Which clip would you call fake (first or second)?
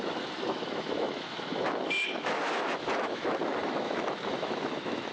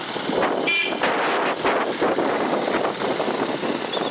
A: first